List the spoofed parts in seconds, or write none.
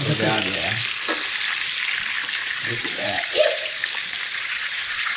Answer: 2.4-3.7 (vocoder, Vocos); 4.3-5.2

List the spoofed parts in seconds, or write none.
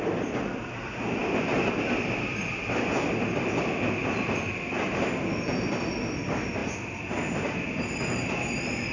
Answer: none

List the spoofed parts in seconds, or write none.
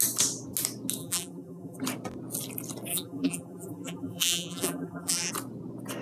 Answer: 1.0-1.8 (vocoder, BigVGAN v2); 2.9-5.3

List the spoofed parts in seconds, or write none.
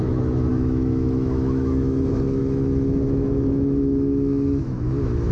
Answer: 0.0-5.3 (autoencoder, DAC-VAE)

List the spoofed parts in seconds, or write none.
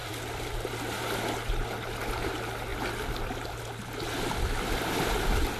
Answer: 0.0-0.7 (vocoder, BigVGAN v2)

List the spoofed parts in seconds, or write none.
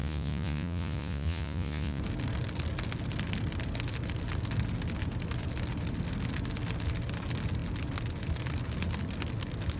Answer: 0.0-2.0 (vocoder, Vocos)